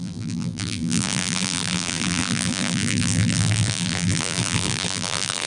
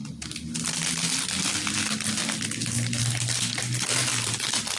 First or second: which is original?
second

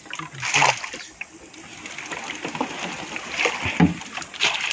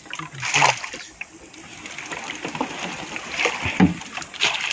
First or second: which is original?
first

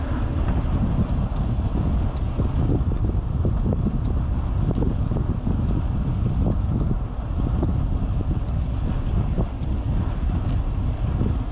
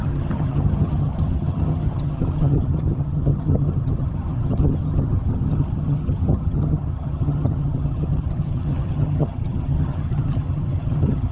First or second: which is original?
first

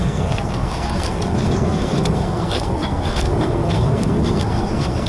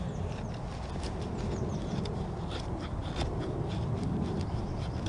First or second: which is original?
second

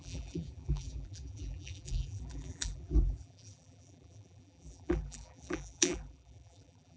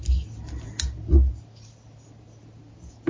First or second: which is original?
second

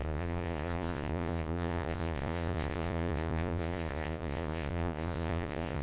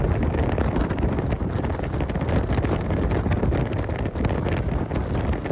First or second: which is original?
second